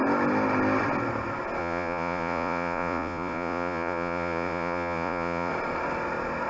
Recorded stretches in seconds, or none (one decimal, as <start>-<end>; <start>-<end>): 0.0-1.6; 5.5-6.5